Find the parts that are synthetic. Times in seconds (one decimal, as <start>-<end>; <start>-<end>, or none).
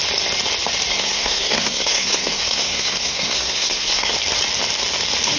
0.9-4.1